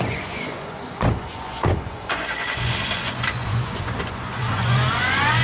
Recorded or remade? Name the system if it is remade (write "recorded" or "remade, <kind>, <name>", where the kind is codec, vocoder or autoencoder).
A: remade, vocoder, Vocos